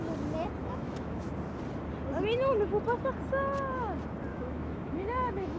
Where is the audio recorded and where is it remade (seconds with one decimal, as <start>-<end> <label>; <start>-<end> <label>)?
0.0-0.6 recorded; 0.6-1.3 remade; 1.3-4.3 recorded; 4.3-5.6 remade